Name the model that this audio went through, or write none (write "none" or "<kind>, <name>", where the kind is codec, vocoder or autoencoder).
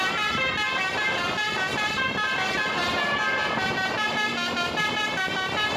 none